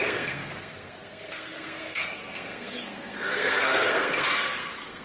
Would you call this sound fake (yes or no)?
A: yes